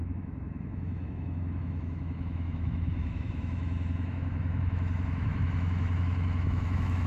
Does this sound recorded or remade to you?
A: remade